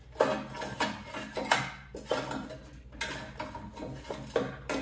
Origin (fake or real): real